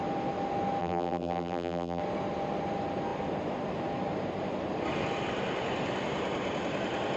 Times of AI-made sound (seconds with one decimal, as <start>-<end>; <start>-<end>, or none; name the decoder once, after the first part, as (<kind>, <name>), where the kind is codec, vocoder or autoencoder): 0.8-2.0 (vocoder, BigVGAN v2)